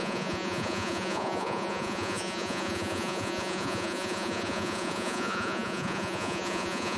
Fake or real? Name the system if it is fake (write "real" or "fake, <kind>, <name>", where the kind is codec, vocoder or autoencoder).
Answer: fake, vocoder, Vocos